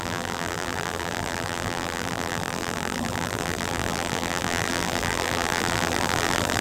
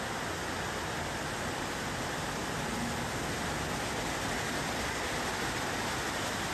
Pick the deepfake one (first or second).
first